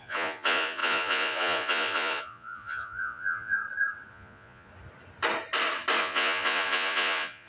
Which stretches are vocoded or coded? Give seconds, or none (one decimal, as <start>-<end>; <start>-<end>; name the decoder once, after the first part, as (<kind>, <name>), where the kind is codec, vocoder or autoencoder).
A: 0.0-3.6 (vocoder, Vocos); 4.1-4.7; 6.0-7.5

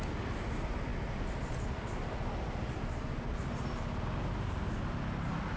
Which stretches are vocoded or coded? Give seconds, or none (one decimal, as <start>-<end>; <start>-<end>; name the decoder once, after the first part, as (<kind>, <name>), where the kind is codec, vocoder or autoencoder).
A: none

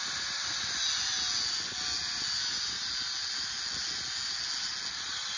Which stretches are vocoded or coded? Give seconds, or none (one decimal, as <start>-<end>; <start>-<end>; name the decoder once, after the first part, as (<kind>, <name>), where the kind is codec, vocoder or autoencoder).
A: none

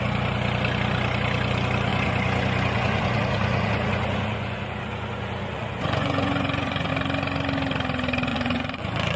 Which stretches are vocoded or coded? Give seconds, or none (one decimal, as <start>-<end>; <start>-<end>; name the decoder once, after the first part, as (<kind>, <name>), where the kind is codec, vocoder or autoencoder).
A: 1.9-6.9 (vocoder, Vocos); 8.3-9.2

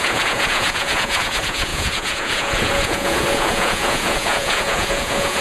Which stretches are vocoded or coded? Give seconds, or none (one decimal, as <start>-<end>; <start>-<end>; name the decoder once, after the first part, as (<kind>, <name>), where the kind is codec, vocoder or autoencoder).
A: 0.0-5.4 (vocoder, Vocos)

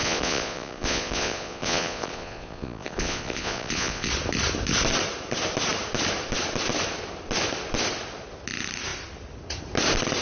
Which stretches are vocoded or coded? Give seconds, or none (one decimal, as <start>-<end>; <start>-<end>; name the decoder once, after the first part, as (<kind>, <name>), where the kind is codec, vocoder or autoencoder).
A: 0.0-4.1 (vocoder, Vocos)